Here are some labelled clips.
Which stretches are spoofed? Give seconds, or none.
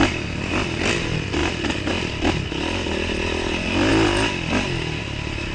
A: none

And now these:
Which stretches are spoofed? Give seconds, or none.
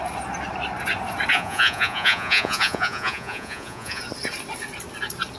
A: 1.3-4.0 (vocoder, Vocos)